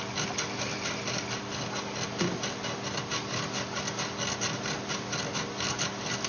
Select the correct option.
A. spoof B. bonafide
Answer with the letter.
B